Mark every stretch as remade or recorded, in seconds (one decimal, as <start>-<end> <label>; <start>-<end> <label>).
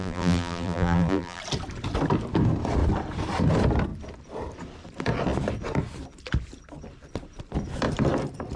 0.0-1.4 remade; 1.4-8.6 recorded